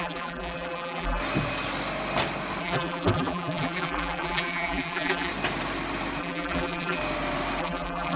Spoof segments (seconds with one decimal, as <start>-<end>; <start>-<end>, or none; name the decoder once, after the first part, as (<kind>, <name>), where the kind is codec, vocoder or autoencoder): 0.0-1.2 (vocoder, BigVGAN v2); 2.6-5.3; 6.2-7.0; 7.6-8.2

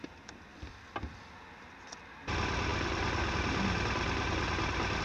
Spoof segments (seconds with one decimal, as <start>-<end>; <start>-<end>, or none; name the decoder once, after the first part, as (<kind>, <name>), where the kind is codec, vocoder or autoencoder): none

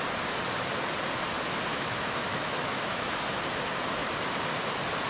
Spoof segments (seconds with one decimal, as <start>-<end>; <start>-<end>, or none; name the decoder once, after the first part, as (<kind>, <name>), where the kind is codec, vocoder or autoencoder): 1.7-3.0 (autoencoder, DAC-VAE)

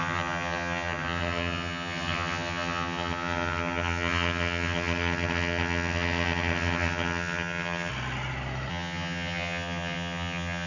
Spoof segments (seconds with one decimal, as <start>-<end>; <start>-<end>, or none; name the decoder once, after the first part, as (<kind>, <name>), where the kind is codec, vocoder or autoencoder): 0.0-7.9 (vocoder, HiFi-GAN); 8.7-10.7

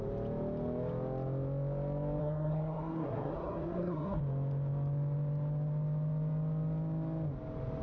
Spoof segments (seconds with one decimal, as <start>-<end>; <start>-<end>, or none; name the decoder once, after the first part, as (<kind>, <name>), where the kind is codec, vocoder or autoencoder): 2.2-4.2 (codec, SNAC)